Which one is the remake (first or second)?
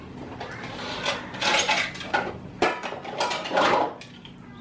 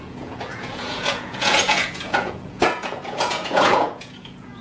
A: second